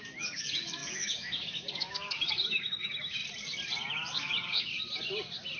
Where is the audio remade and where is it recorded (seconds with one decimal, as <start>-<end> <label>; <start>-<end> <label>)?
0.0-3.2 remade; 3.2-3.9 recorded; 3.9-4.7 remade; 4.7-5.6 recorded